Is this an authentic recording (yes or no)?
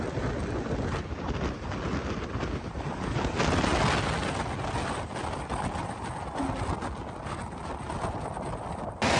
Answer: yes